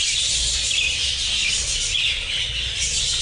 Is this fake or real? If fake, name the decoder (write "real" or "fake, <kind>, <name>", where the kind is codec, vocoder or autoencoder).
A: real